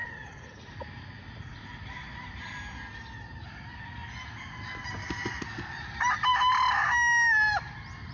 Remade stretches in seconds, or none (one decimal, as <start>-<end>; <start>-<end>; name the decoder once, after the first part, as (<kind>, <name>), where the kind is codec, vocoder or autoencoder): 0.0-0.7 (vocoder, Vocos)